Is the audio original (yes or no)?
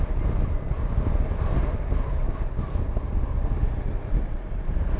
yes